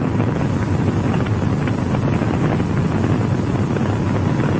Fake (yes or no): no